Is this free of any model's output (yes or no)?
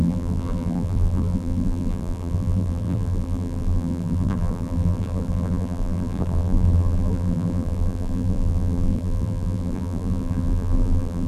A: no